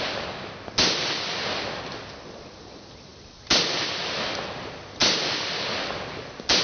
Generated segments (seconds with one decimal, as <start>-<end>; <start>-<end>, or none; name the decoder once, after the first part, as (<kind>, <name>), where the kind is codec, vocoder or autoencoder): none